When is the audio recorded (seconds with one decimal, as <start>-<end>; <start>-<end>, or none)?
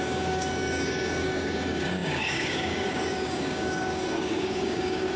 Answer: none